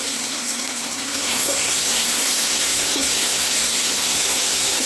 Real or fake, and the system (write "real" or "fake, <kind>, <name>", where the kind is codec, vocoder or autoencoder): fake, codec, SNAC